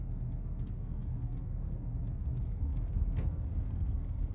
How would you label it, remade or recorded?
remade